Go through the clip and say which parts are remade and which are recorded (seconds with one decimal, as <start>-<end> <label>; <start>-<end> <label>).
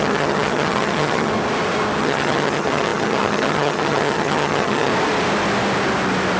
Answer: 0.0-1.3 remade; 1.3-2.0 recorded; 2.0-4.9 remade; 4.9-6.4 recorded